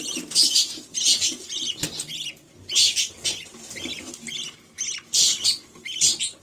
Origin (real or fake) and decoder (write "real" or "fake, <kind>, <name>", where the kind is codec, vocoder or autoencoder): real